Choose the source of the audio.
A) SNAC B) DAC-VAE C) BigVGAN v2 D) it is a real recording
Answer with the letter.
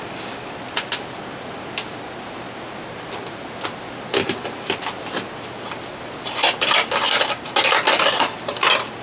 D